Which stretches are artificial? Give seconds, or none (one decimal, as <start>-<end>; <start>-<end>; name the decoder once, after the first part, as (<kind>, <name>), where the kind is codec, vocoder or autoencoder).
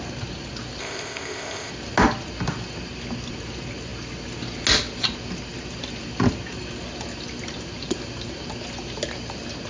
0.8-1.7 (codec, ZipCodec)